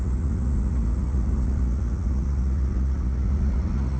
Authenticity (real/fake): fake